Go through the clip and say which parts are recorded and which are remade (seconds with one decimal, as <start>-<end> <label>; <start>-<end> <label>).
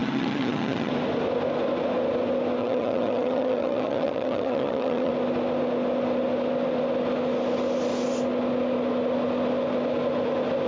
0.0-0.9 remade; 0.9-2.6 recorded; 2.6-5.1 remade; 5.1-10.7 recorded